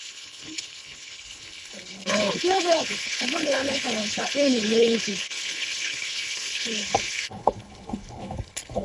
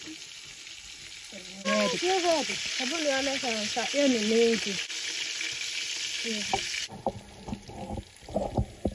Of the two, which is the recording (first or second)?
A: second